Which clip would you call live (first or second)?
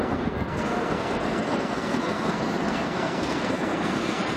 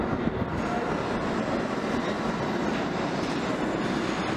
second